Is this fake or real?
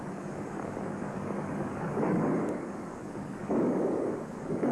fake